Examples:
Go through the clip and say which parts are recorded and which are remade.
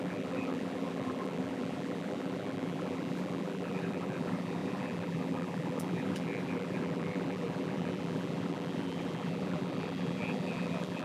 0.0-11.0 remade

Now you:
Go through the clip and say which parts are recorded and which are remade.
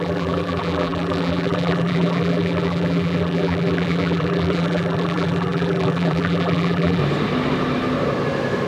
0.0-7.0 remade; 7.0-8.7 recorded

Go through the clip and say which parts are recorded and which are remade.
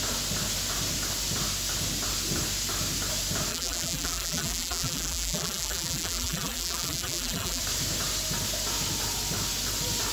0.0-3.5 recorded; 3.5-7.6 remade; 7.6-10.1 recorded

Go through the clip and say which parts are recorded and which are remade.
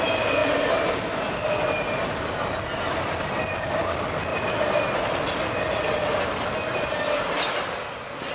0.0-8.3 recorded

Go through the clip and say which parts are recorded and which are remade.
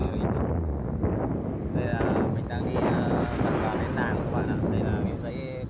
0.0-5.7 recorded